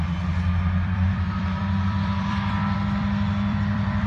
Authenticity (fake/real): fake